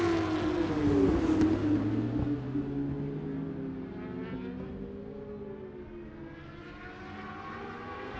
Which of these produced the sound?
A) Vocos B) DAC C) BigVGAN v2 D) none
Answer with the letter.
D